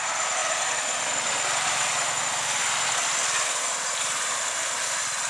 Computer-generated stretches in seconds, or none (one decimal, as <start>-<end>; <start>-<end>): 0.0-0.4; 3.6-5.3

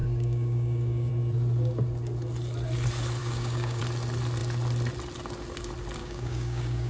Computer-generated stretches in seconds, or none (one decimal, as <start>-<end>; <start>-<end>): 0.0-1.1; 3.2-3.8; 6.0-6.9

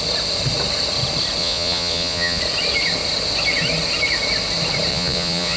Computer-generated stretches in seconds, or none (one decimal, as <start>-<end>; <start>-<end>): 1.4-2.4; 4.9-5.6